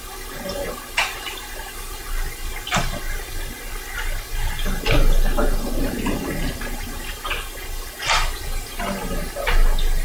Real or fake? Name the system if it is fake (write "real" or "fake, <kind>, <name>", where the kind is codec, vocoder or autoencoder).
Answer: real